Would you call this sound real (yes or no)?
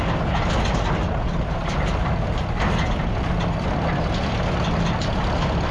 yes